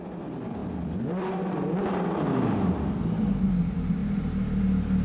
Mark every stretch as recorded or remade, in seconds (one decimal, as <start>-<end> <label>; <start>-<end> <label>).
0.0-5.0 recorded